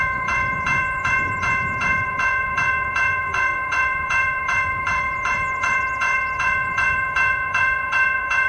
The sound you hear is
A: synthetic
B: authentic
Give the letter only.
A